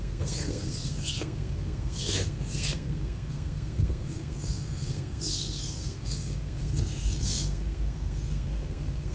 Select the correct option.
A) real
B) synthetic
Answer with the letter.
B